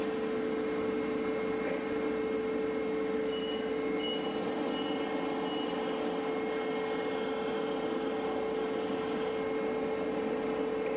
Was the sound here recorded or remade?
recorded